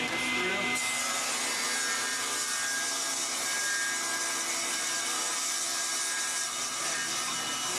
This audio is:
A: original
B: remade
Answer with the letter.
B